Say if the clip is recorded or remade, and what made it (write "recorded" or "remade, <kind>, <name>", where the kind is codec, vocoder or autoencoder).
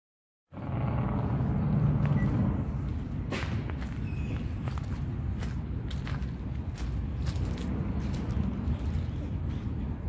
recorded